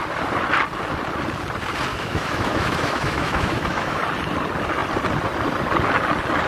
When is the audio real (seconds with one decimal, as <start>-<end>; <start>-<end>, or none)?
0.0-1.9; 4.0-6.5